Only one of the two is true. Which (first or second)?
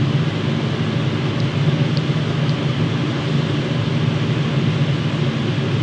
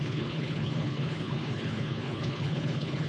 first